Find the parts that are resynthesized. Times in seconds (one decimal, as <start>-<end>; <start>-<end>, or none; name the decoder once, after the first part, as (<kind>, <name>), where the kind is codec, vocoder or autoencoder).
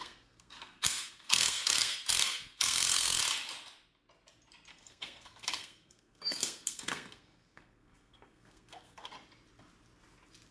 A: 0.0-3.2 (codec, SNAC); 4.7-9.1